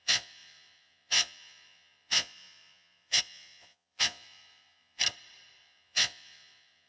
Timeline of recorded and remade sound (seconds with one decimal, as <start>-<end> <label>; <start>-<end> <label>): 0.0-5.0 remade; 5.0-5.6 recorded; 5.6-6.9 remade